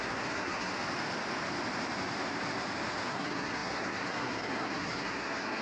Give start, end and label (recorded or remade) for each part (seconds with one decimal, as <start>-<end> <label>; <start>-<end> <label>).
0.0-0.7 remade; 0.7-3.0 recorded; 3.0-5.6 remade